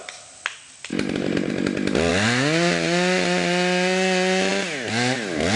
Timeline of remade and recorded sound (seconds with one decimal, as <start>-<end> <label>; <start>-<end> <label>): 0.0-0.9 recorded; 0.9-1.5 remade; 1.5-5.6 recorded